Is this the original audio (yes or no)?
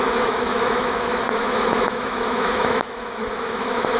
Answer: no